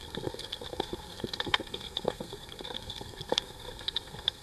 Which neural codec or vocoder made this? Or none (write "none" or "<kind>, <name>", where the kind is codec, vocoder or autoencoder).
codec, SNAC